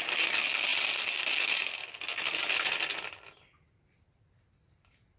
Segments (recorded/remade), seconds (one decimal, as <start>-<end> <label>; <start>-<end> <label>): 0.0-5.2 recorded